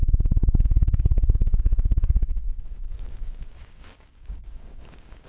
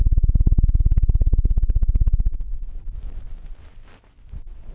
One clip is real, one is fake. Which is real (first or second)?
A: second